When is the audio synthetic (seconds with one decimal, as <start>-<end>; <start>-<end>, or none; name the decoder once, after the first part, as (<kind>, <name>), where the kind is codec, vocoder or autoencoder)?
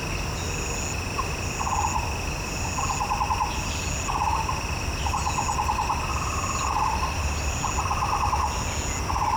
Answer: 6.1-7.6 (vocoder, BigVGAN v2)